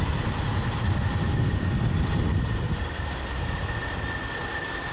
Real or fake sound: real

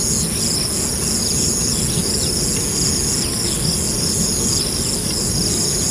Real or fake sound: real